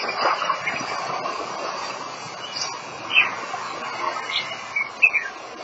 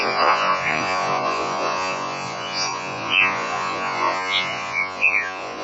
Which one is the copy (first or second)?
second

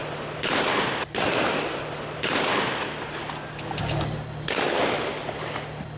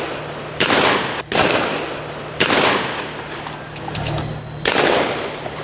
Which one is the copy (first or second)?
first